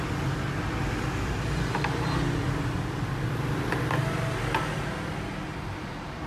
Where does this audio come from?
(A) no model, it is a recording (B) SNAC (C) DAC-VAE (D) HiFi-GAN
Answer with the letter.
A